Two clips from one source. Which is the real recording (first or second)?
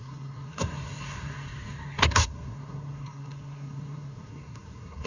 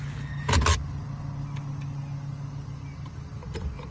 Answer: second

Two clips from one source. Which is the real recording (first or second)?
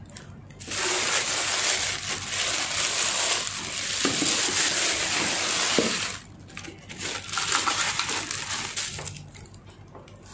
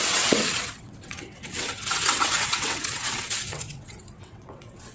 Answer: first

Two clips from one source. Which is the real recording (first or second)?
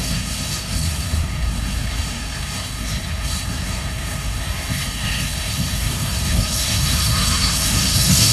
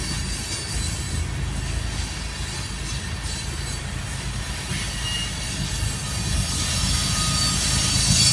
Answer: second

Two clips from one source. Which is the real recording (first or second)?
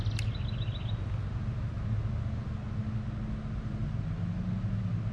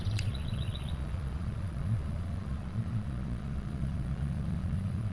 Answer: first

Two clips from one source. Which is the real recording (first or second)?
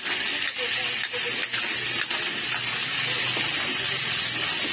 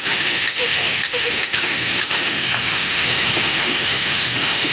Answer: first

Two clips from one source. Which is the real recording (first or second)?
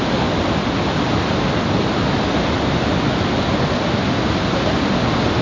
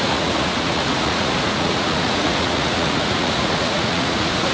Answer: first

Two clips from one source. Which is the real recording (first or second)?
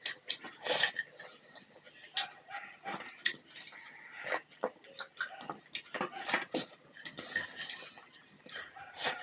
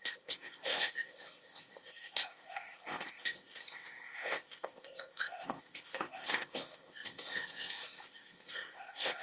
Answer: first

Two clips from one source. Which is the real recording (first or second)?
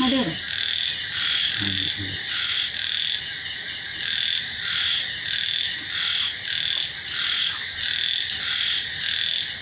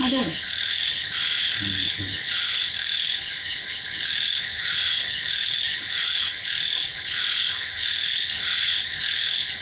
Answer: first